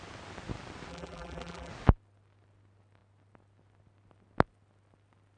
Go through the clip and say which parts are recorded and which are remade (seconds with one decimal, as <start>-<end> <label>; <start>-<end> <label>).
0.0-0.9 recorded; 0.9-1.7 remade; 1.7-5.4 recorded